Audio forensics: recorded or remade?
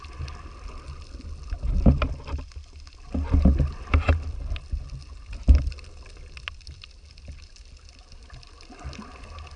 recorded